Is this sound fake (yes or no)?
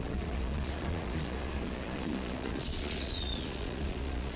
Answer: yes